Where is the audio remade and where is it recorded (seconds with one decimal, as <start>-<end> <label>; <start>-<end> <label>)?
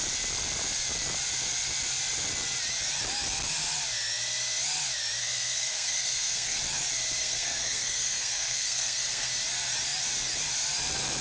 0.0-5.2 recorded; 5.2-6.6 remade; 6.6-7.2 recorded; 7.2-9.3 remade; 9.3-11.2 recorded